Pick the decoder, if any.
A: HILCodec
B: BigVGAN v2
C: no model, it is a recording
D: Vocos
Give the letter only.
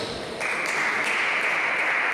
C